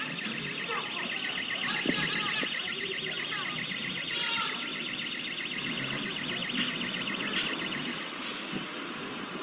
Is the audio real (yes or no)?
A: yes